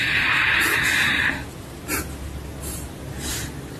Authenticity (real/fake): real